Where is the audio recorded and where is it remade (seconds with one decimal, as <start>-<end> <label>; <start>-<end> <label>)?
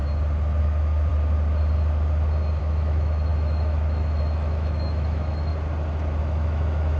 0.0-0.6 recorded; 0.6-1.1 remade; 1.1-2.6 recorded; 2.6-5.5 remade; 5.5-6.2 recorded; 6.2-7.0 remade